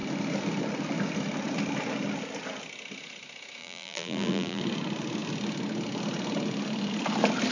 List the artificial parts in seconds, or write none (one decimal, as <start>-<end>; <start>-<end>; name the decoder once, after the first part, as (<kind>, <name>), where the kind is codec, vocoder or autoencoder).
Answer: 3.6-4.6 (vocoder, BigVGAN v2)